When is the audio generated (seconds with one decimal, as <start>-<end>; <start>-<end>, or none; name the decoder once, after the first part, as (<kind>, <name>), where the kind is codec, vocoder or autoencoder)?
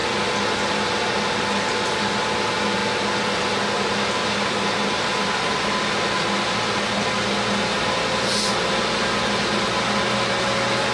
none